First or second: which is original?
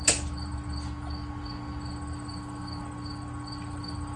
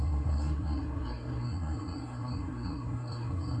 first